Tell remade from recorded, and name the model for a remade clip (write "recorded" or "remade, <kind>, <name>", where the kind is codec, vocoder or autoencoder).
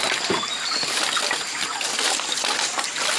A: recorded